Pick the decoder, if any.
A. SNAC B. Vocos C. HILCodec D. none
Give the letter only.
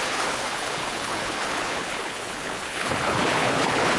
C